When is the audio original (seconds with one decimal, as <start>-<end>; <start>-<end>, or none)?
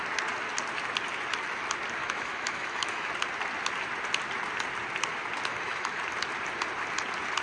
0.0-2.0; 3.1-5.5; 6.0-7.4